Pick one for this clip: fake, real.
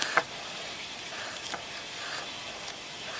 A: fake